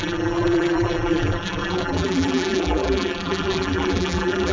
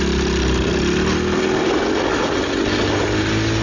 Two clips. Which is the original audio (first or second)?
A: second